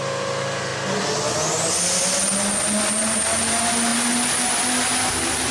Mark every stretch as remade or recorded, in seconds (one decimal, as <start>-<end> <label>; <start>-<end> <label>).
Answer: 0.0-5.5 recorded